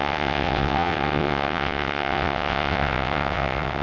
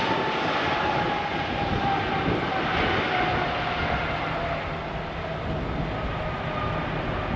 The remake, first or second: first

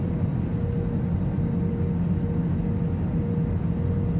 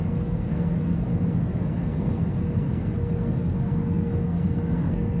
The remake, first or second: second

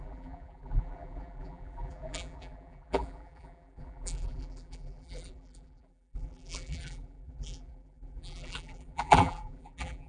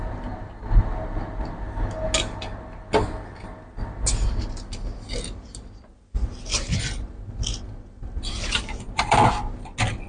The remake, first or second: first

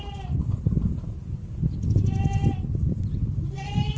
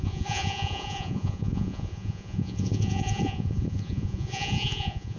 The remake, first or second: second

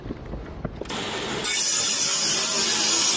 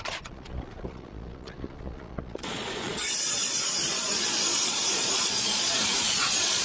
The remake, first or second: second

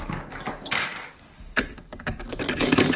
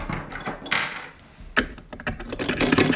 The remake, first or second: first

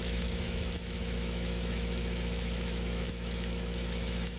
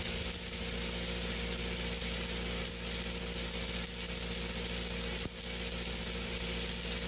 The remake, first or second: first